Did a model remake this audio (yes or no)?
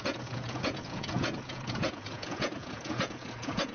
yes